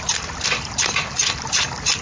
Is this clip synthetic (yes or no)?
no